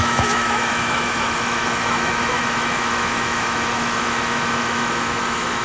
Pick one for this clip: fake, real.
fake